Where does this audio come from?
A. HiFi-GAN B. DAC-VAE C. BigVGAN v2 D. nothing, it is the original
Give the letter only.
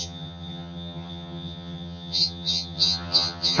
A